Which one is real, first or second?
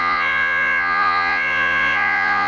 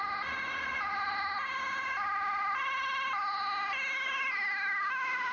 second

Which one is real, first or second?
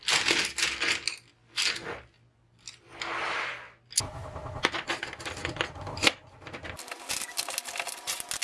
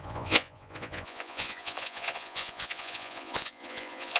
first